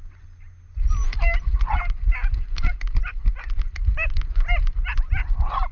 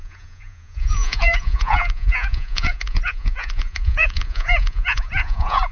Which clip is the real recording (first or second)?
first